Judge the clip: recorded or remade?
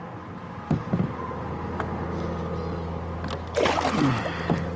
recorded